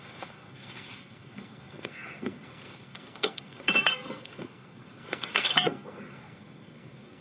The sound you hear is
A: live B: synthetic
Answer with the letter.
B